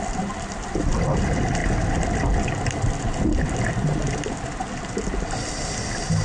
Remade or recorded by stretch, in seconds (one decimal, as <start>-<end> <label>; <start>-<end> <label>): 0.0-6.2 recorded